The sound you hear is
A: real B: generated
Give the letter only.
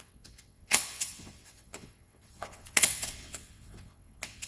B